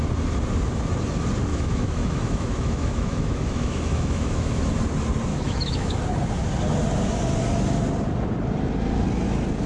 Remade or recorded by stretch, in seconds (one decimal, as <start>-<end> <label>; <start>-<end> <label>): 0.0-1.5 recorded; 1.5-4.6 remade; 4.6-5.3 recorded; 5.3-6.0 remade; 6.0-9.7 recorded